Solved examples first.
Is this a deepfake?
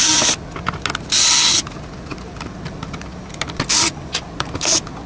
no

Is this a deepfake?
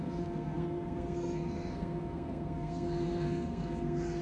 yes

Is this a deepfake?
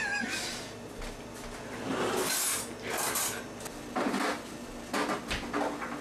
no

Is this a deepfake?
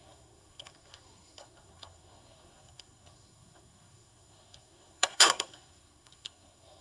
yes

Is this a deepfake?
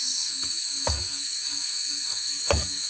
yes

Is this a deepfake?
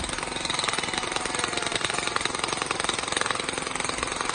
no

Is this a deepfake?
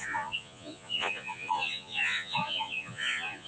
yes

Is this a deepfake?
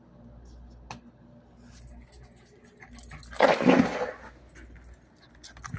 no